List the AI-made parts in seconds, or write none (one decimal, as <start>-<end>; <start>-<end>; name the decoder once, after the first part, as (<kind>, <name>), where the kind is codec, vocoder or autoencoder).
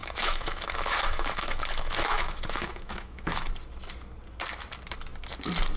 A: 0.0-3.5 (autoencoder, DAC-VAE)